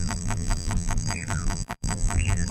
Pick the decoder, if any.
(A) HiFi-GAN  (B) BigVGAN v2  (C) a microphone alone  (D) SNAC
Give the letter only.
B